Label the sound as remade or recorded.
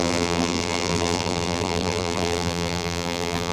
remade